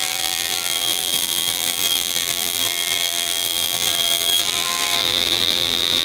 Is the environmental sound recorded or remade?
remade